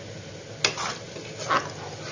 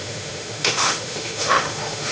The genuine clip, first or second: first